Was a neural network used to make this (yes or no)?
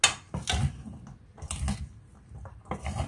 no